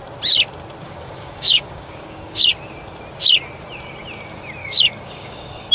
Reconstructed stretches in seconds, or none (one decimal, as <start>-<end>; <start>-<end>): 0.8-2.5; 4.6-5.7